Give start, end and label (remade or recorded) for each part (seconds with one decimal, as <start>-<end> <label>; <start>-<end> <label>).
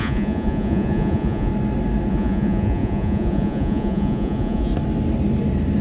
0.0-1.5 remade; 1.5-2.1 recorded; 2.1-4.7 remade; 4.7-5.8 recorded